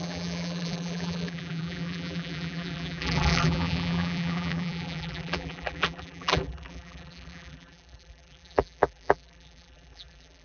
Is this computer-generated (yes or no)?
yes